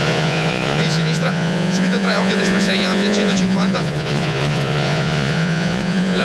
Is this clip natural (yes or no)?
no